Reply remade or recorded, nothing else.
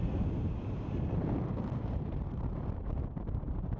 remade